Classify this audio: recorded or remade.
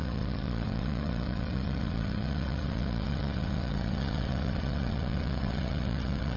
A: remade